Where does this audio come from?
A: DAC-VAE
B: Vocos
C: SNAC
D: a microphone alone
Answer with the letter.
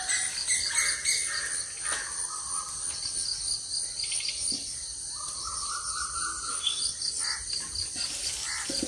D